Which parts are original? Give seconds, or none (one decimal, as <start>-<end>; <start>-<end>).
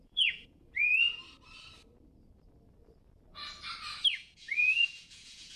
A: 1.2-4.1